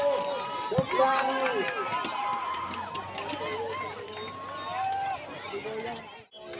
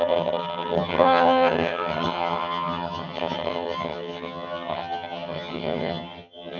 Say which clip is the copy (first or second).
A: second